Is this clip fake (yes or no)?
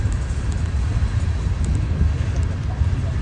no